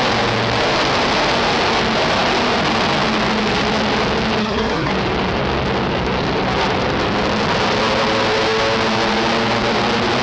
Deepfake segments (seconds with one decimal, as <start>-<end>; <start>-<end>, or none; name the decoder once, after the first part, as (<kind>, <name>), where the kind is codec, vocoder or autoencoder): 4.4-4.9 (codec, SNAC)